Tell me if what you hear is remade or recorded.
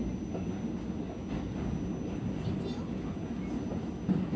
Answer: recorded